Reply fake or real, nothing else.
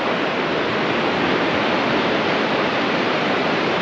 real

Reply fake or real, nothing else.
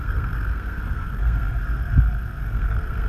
fake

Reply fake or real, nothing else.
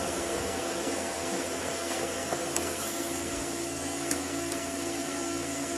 fake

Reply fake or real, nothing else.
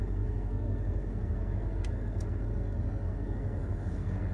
fake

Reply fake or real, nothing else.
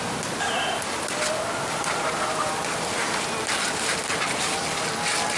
real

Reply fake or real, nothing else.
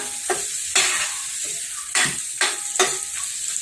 real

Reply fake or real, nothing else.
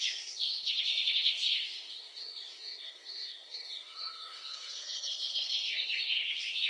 fake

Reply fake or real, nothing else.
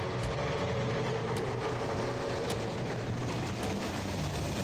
real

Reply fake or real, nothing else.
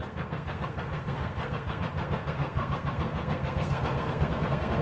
fake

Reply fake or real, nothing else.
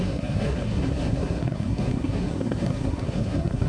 fake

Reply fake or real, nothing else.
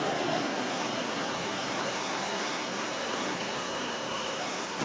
fake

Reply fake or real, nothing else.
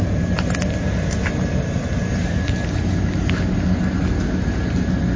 real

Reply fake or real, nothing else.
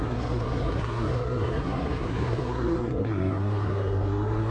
fake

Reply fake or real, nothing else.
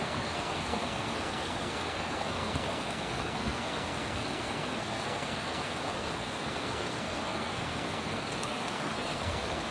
fake